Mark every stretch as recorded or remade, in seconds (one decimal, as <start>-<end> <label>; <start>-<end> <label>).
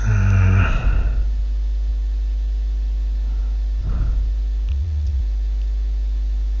0.0-4.7 recorded; 4.7-5.2 remade; 5.2-6.6 recorded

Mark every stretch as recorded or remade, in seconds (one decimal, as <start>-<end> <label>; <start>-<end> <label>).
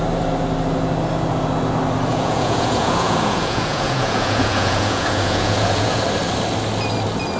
0.0-2.1 recorded; 2.1-6.0 remade; 6.0-7.4 recorded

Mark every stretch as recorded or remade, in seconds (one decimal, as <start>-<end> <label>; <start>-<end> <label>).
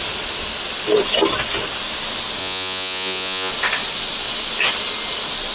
0.0-2.4 recorded; 2.4-3.5 remade; 3.5-5.5 recorded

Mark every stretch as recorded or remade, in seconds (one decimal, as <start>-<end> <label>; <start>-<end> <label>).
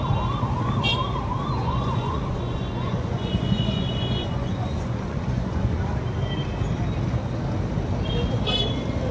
0.0-1.6 recorded; 1.6-5.8 remade; 5.8-9.1 recorded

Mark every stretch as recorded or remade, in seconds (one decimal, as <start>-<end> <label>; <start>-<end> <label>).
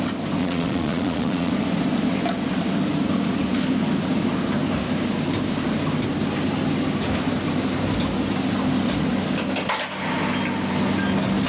0.0-0.4 recorded; 0.4-1.5 remade; 1.5-11.5 recorded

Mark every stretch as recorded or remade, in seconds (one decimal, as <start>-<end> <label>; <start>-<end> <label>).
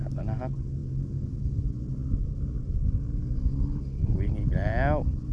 0.0-5.3 recorded